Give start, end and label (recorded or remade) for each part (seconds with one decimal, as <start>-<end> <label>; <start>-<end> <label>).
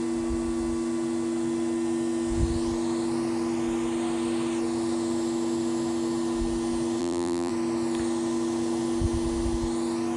0.0-7.0 recorded; 7.0-7.5 remade; 7.5-10.2 recorded